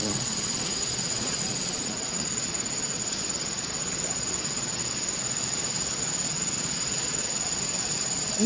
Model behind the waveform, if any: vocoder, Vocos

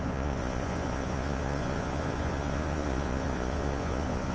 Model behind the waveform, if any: vocoder, Vocos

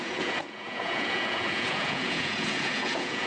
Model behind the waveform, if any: vocoder, Vocos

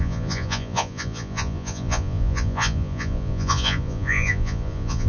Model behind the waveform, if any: vocoder, Vocos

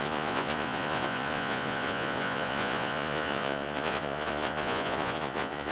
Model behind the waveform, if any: vocoder, Vocos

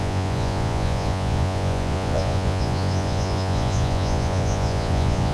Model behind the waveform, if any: vocoder, Vocos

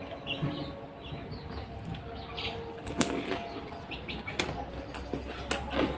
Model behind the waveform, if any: none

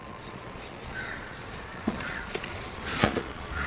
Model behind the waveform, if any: vocoder, Vocos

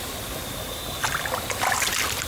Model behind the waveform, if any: none